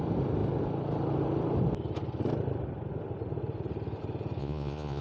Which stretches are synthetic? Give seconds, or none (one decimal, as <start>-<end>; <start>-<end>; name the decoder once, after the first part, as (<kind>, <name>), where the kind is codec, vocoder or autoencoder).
4.4-5.0 (vocoder, Vocos)